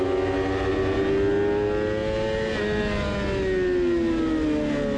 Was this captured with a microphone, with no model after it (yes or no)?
yes